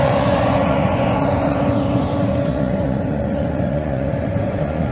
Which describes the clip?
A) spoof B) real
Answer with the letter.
A